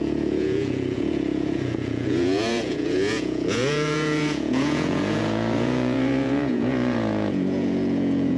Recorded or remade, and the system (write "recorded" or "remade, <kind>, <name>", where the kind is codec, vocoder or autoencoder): remade, vocoder, Vocos